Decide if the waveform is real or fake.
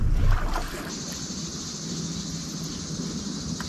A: real